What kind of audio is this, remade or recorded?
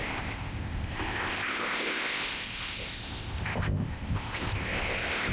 remade